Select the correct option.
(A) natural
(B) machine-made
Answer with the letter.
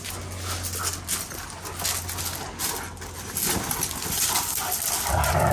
A